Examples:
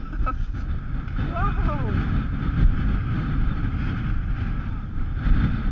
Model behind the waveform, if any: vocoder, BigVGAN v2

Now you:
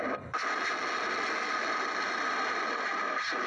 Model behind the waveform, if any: none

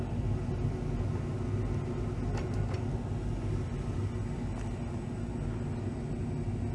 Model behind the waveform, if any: none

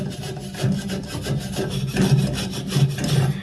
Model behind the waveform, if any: none